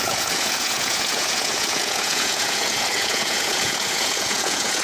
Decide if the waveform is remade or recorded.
remade